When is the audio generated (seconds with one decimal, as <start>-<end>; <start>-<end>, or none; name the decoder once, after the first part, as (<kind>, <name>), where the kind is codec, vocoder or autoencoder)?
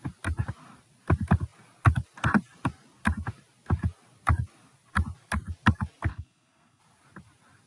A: 6.1-6.8 (codec, SNAC)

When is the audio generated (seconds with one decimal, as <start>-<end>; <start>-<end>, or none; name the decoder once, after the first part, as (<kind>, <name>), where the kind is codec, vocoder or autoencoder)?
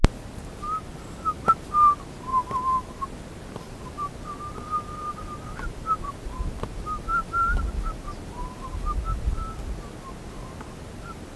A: none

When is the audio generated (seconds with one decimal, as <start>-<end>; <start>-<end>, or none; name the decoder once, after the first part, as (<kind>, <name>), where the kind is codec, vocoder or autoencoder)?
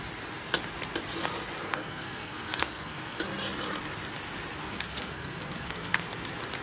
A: 1.6-3.2 (codec, SNAC); 4.6-6.0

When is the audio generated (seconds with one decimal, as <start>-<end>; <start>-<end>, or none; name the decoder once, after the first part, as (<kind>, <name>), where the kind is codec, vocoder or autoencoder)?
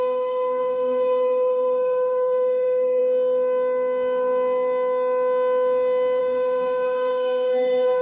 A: 0.0-3.0 (codec, SNAC); 6.2-8.0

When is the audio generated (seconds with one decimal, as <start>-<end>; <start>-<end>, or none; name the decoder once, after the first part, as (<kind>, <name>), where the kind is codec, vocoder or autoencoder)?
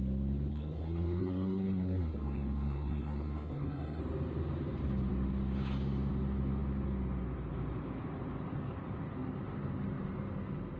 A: 0.5-4.0 (codec, SNAC)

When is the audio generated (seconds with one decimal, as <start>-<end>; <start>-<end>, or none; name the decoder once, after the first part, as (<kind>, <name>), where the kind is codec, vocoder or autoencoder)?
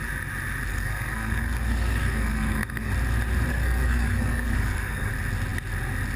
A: 0.7-2.9 (codec, SNAC); 3.5-5.1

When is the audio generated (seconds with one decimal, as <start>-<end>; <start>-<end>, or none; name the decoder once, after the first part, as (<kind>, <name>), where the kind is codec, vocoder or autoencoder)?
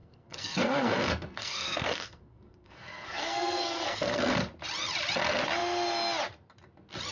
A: 0.0-4.3 (codec, SNAC)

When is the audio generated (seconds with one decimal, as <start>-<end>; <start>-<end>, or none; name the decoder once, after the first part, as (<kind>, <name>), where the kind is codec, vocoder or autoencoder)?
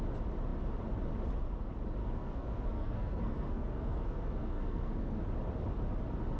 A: 2.0-5.2 (codec, SNAC)